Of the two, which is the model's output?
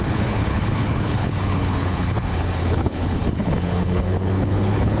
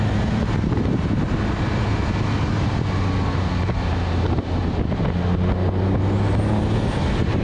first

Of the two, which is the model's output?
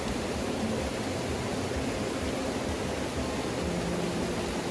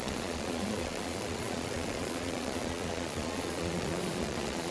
second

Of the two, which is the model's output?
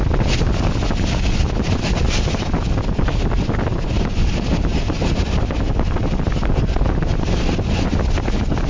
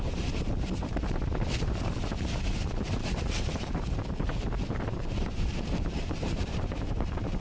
second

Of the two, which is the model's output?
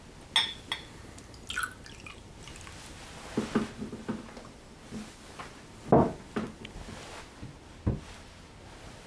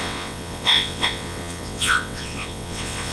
second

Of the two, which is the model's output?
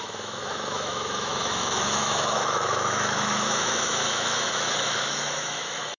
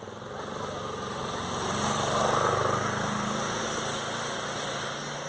first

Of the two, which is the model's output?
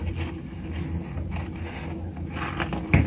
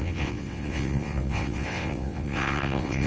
second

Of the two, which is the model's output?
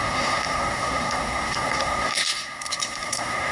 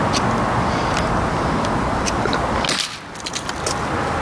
first